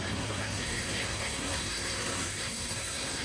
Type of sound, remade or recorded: remade